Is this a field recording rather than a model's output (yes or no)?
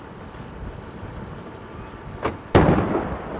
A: yes